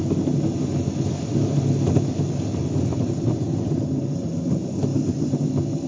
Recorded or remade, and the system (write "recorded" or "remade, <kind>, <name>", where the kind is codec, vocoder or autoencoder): recorded